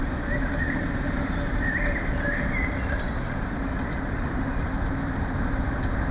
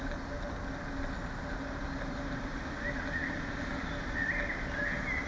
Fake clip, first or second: first